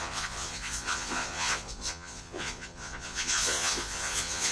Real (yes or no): no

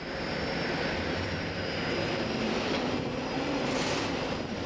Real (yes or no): no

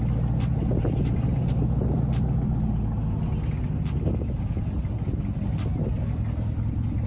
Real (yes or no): yes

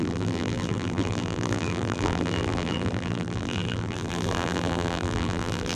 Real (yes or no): no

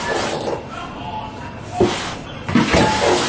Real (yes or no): yes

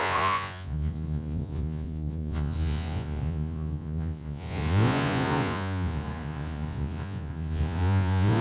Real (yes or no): no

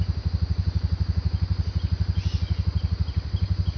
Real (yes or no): yes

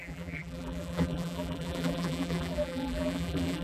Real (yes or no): no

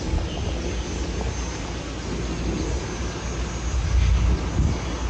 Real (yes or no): yes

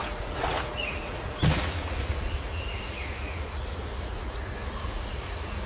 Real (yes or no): no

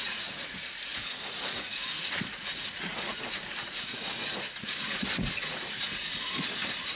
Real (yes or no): no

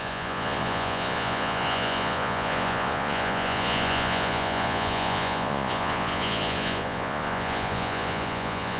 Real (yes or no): no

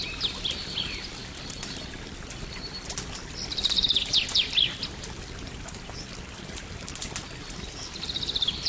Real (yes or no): yes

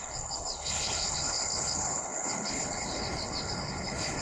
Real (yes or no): no